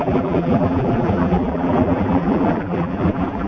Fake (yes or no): yes